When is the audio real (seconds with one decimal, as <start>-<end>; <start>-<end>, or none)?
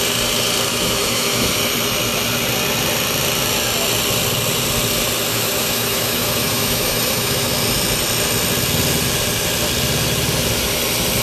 0.0-0.7; 1.6-5.3; 7.5-11.2